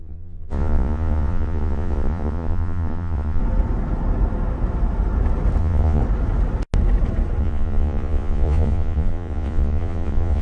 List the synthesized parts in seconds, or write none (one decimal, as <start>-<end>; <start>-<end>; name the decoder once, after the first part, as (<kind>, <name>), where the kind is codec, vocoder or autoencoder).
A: 0.0-3.4 (vocoder, Vocos); 5.6-6.0; 7.4-10.4